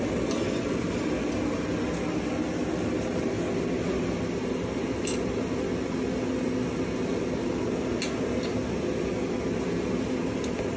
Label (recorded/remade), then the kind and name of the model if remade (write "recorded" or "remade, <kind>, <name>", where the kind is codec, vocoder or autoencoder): recorded